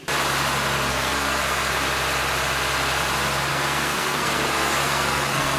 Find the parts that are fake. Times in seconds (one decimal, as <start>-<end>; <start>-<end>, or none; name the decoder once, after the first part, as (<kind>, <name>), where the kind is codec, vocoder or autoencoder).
0.9-1.7 (codec, SNAC); 3.5-5.6